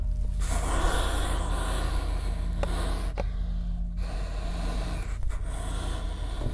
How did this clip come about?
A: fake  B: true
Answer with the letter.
B